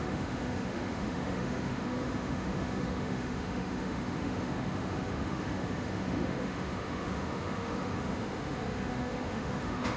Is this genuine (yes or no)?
no